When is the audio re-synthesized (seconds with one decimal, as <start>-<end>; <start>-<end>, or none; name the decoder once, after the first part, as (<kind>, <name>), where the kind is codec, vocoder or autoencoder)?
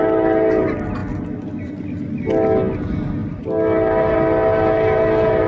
none